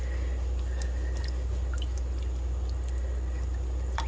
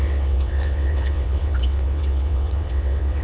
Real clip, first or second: first